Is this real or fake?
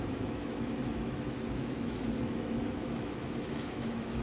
fake